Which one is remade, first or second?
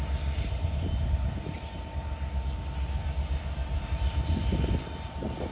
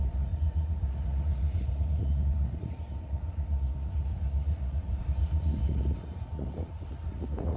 second